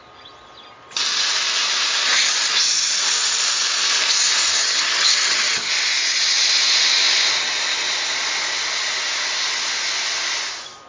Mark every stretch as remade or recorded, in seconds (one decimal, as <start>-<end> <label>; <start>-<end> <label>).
0.0-4.6 recorded; 4.6-5.7 remade; 5.7-10.9 recorded